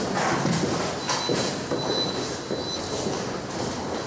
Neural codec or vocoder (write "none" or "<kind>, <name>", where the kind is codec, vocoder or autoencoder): none